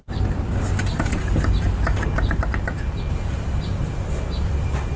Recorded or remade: recorded